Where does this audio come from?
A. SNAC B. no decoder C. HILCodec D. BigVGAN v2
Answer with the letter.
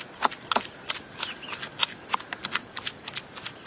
B